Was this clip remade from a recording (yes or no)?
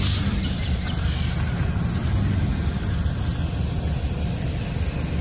no